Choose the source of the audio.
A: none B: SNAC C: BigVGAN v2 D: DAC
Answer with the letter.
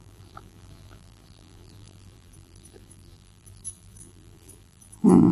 C